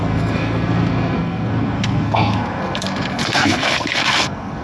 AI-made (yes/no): yes